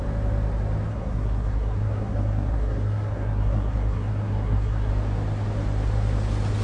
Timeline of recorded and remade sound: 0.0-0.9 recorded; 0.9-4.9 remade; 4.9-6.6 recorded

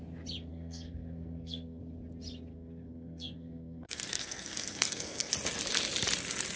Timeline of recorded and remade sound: 0.0-0.5 recorded; 0.5-1.8 remade; 1.8-2.5 recorded; 2.5-5.3 remade; 5.3-6.6 recorded

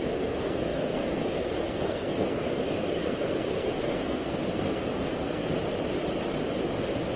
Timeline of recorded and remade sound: 0.0-5.4 remade; 5.4-7.2 recorded

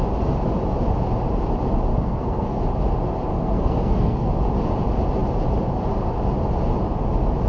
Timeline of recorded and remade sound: 0.0-1.9 recorded; 1.9-2.6 remade; 2.6-3.3 recorded; 3.3-4.3 remade; 4.3-7.5 recorded

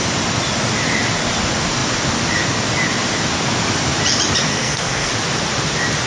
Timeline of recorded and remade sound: 0.0-4.5 recorded; 4.5-5.1 remade; 5.1-6.1 recorded

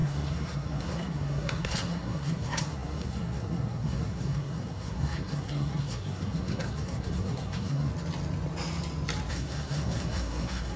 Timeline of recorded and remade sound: 0.0-7.9 remade; 7.9-9.3 recorded; 9.3-10.8 remade